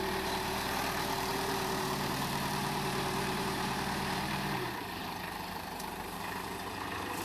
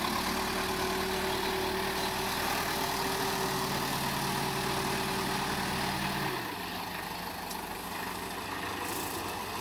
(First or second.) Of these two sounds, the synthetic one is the first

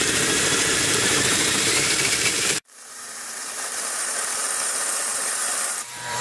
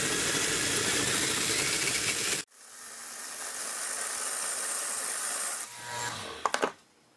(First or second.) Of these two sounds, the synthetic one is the first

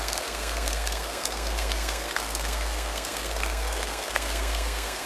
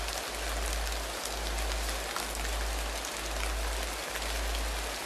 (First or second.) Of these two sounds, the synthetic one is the first